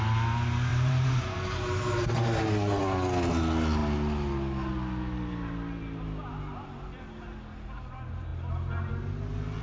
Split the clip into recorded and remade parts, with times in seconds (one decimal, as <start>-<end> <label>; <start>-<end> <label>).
0.0-0.7 recorded; 0.7-2.8 remade; 2.8-9.6 recorded